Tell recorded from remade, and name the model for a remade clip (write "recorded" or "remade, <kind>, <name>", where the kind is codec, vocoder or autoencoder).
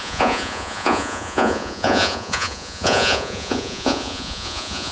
remade, vocoder, Vocos